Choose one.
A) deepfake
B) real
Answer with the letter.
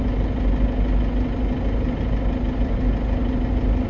B